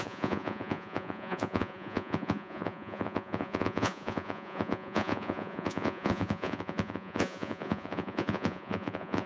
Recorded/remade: remade